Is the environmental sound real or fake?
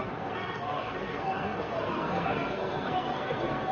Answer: fake